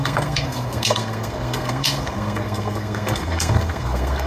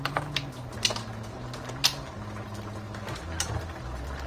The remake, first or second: first